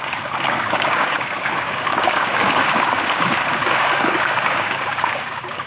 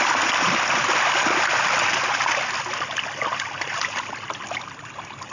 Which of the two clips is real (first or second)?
second